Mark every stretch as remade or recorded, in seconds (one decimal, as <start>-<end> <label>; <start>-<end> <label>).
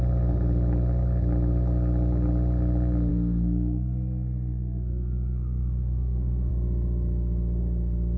0.0-3.1 recorded; 3.1-6.5 remade; 6.5-8.2 recorded